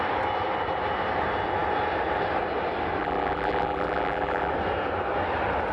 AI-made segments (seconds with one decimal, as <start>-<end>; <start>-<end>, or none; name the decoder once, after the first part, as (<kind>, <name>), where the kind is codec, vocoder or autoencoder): 3.0-4.5 (vocoder, BigVGAN v2)